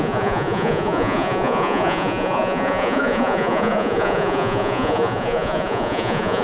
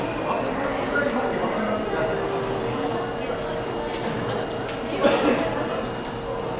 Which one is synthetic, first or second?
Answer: first